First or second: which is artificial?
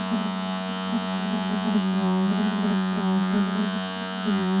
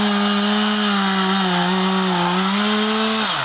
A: first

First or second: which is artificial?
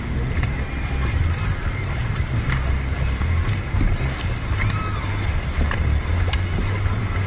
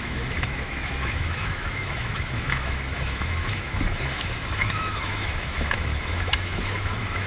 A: second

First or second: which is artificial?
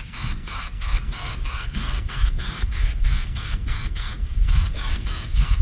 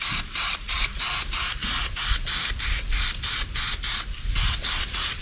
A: first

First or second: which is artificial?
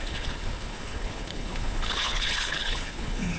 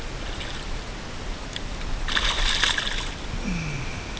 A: first